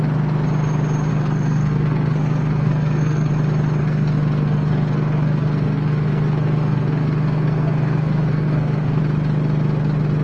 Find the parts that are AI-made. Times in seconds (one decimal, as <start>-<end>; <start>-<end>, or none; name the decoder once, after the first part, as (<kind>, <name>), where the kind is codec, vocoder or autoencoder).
1.1-3.3 (codec, SNAC); 3.8-9.0